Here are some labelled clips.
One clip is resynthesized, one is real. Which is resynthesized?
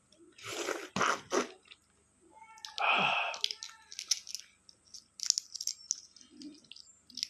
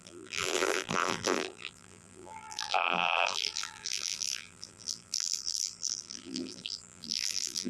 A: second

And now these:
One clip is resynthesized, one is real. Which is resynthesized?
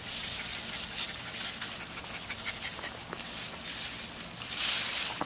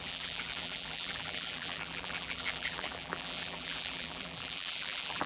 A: second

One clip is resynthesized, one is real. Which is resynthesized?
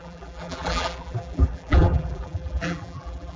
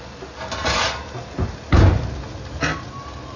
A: first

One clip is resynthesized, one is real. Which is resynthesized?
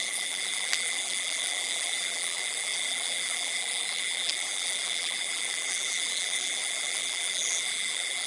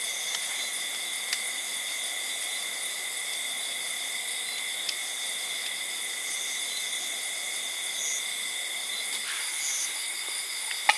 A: first